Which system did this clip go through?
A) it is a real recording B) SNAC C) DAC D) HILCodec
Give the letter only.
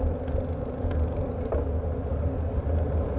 A